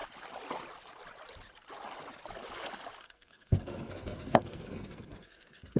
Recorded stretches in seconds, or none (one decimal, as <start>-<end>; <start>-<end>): 0.0-3.0